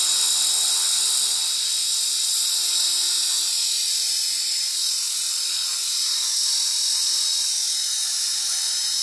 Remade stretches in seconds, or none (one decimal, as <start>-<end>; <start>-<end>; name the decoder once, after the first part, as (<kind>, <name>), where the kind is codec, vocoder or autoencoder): none